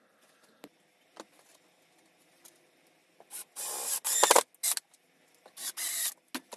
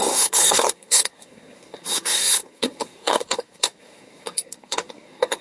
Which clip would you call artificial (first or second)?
second